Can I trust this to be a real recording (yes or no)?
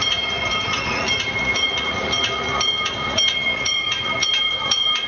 no